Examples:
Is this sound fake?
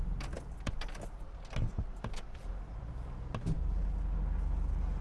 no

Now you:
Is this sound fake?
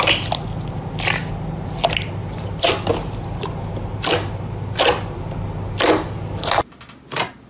no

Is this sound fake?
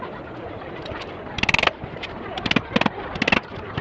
no